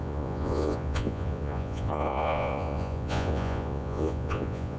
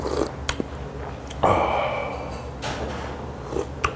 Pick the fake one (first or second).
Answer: first